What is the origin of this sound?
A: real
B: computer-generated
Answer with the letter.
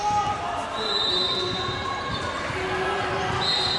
A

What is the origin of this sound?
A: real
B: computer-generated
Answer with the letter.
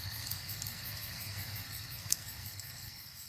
B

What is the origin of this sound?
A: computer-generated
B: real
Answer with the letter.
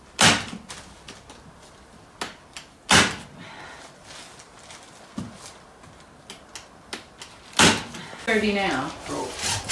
B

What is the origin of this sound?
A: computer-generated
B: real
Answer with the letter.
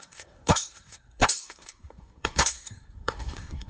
A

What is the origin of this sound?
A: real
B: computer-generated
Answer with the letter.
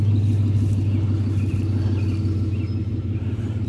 A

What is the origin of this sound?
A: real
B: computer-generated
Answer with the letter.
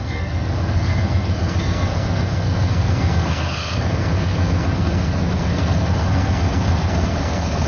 B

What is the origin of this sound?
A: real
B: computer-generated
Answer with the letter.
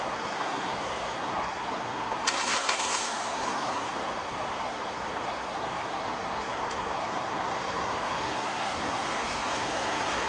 B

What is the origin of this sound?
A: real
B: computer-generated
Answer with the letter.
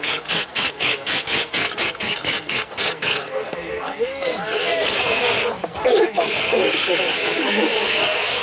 B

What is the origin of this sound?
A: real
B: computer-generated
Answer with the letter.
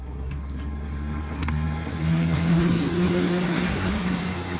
B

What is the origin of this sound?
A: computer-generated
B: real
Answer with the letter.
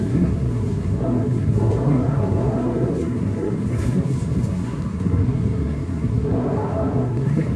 A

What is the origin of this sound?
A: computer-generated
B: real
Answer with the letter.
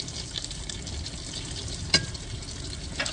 B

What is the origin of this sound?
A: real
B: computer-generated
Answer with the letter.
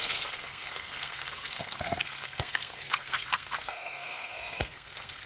B